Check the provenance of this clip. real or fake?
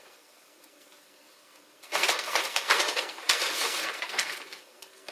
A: fake